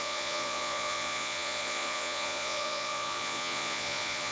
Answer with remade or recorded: remade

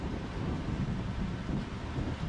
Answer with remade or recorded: recorded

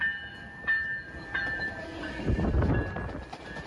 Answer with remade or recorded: recorded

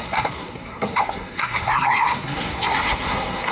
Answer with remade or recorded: remade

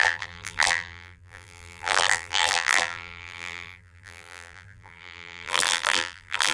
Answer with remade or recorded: remade